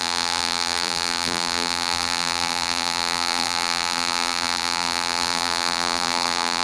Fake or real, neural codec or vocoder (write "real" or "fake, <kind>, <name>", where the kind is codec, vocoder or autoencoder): fake, vocoder, BigVGAN v2